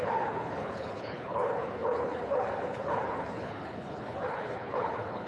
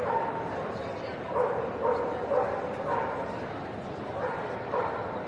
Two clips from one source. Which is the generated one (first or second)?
first